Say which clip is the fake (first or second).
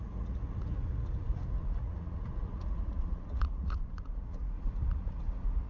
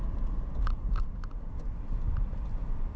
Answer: first